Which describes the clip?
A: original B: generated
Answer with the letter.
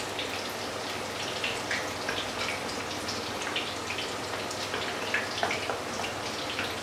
A